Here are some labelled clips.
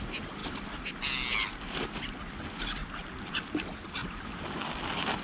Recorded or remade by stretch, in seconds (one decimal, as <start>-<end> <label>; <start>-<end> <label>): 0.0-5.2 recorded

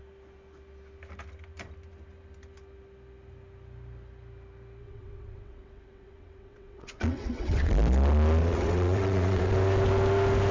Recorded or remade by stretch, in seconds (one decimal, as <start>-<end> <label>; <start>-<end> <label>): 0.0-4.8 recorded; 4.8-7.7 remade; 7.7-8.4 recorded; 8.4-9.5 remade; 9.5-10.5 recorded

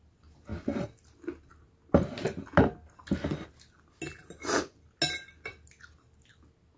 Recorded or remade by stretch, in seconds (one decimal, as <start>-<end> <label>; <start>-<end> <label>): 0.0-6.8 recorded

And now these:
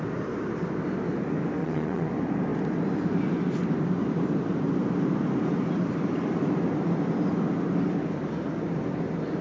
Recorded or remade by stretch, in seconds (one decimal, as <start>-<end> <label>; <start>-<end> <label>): 0.0-1.6 recorded; 1.6-2.1 remade; 2.1-9.4 recorded

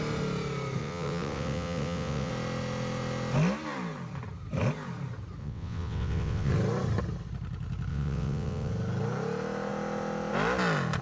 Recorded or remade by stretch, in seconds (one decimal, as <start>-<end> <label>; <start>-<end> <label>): 0.0-0.8 recorded; 0.8-2.3 remade; 2.3-5.4 recorded; 5.4-6.5 remade; 6.5-7.9 recorded; 7.9-8.7 remade; 8.7-11.0 recorded

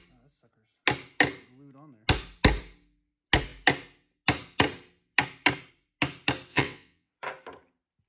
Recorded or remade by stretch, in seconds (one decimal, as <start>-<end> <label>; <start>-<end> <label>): 0.0-6.5 recorded; 6.5-7.1 remade; 7.1-8.1 recorded